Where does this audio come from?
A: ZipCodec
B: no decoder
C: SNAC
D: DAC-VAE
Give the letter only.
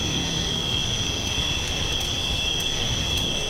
C